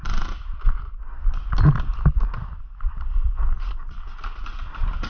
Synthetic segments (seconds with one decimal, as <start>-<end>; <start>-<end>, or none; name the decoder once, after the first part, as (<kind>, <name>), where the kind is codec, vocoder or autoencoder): none